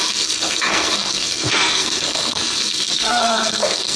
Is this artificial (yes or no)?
yes